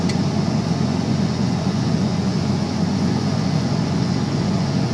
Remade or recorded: remade